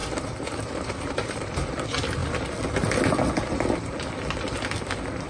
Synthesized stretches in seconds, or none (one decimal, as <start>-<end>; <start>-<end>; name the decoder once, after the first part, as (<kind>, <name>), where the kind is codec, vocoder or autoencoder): 0.0-1.7 (vocoder, BigVGAN v2)